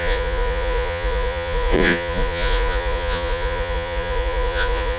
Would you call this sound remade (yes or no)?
yes